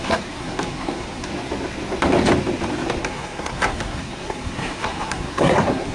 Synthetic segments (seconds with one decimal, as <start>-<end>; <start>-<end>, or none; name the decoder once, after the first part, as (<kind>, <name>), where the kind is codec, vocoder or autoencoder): 0.0-1.3 (codec, SNAC); 3.0-5.9